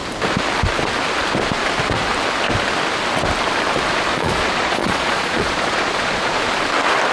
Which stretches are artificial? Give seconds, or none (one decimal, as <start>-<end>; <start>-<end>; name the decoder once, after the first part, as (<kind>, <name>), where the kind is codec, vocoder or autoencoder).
4.1-6.4 (vocoder, Vocos)